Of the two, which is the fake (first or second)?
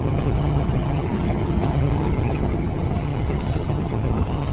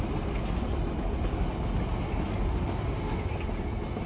first